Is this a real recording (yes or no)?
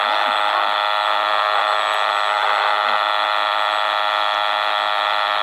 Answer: yes